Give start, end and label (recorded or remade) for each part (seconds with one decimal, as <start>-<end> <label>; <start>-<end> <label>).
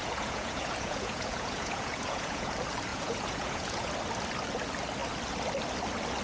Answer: 0.0-2.5 remade; 2.5-2.9 recorded; 2.9-3.9 remade; 3.9-6.2 recorded